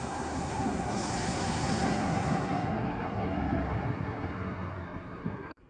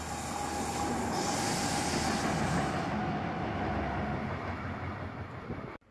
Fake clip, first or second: first